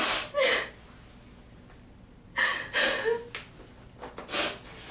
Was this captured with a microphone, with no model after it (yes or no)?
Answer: yes